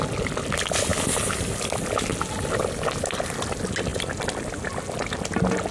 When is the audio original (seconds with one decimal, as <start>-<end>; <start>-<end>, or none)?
0.0-5.7